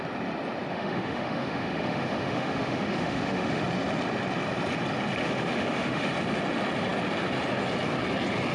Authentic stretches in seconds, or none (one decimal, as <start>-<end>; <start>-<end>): 0.0-0.7; 3.6-5.2; 6.1-8.5